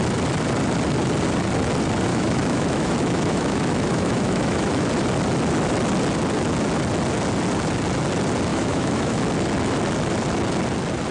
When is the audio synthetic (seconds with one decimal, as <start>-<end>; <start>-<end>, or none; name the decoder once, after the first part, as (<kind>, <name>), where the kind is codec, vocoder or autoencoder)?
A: 2.1-4.9 (autoencoder, DAC-VAE); 8.5-9.2